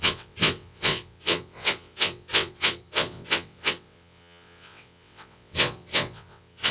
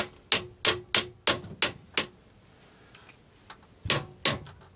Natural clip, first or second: second